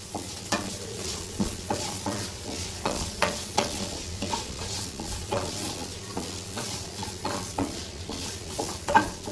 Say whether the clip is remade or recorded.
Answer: remade